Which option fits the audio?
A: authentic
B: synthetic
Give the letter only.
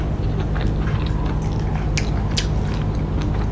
A